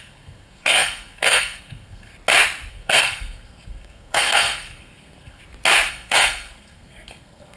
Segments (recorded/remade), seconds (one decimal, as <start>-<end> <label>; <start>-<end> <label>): 0.0-2.1 remade; 2.1-2.7 recorded; 2.7-5.4 remade; 5.4-5.9 recorded; 5.9-7.6 remade